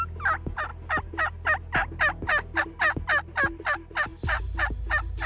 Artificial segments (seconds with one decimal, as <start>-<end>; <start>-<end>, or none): none